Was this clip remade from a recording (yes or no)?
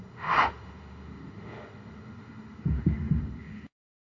yes